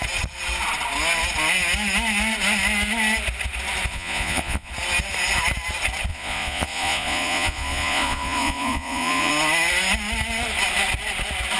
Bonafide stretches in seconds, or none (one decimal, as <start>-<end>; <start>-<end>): 0.0-3.9; 4.7-6.1; 9.3-11.6